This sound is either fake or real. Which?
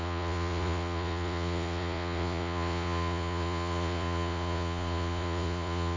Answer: fake